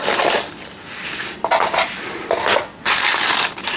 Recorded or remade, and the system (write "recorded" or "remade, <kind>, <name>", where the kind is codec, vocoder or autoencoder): recorded